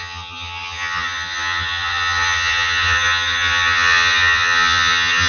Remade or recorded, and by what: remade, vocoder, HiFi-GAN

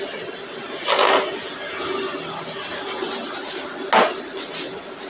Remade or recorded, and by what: recorded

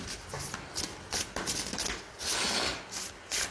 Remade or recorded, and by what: recorded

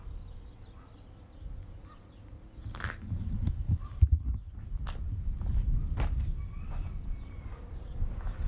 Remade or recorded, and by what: recorded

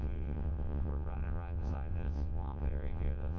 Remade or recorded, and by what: remade, vocoder, WaveNeXt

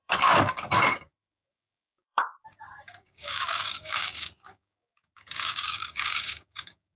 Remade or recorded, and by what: remade, codec, DAC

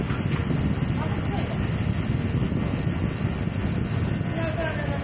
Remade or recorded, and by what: recorded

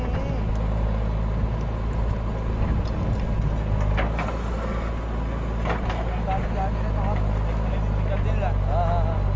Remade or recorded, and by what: recorded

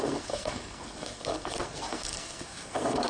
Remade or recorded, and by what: remade, codec, SNAC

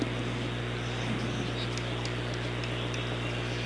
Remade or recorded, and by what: recorded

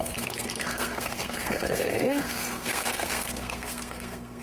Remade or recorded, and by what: remade, codec, SNAC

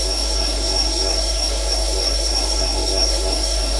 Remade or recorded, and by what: remade, codec, SNAC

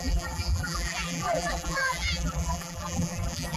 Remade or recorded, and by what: remade, vocoder, BigVGAN v2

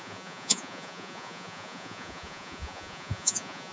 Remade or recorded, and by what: remade, vocoder, Vocos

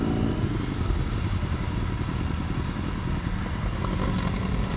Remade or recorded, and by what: recorded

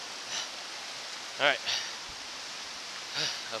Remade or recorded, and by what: recorded